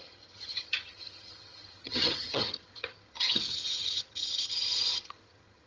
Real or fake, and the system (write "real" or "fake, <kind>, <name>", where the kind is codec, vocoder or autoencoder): fake, vocoder, HiFi-GAN